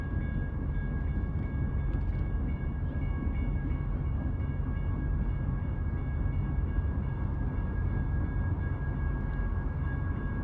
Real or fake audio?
real